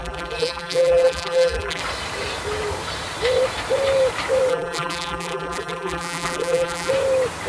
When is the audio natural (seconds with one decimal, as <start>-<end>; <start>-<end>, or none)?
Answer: 1.8-4.5; 6.9-7.5